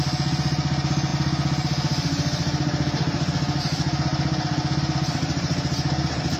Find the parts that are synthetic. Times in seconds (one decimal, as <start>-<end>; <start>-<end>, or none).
none